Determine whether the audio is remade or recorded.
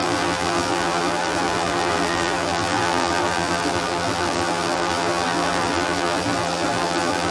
remade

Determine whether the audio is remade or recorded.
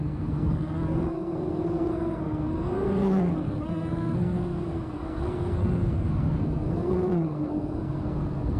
remade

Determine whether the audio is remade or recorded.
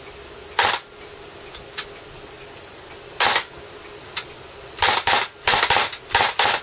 recorded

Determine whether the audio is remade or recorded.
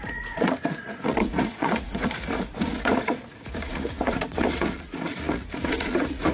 remade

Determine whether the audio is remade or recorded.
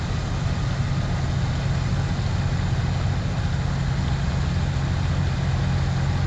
recorded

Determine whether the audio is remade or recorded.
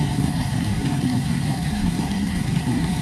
remade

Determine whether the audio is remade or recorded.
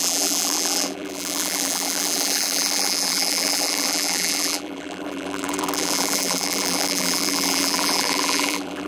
remade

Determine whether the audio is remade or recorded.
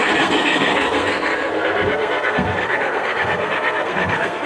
remade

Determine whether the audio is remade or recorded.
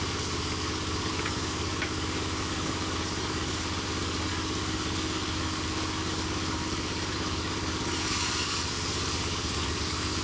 remade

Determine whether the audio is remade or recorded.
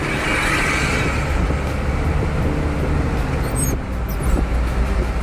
recorded